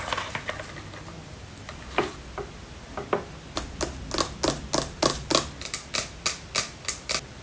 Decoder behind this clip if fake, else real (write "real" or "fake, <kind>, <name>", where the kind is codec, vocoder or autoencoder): real